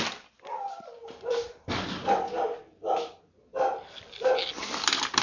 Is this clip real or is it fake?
real